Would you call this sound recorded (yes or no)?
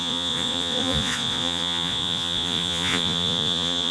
no